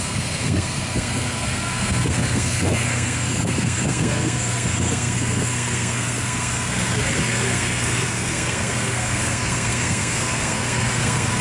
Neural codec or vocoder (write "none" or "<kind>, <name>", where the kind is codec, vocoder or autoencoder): codec, SNAC